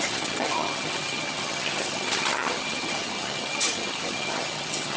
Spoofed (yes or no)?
yes